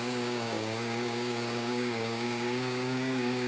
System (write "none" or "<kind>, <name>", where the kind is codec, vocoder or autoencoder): codec, DAC